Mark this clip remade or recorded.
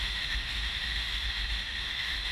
remade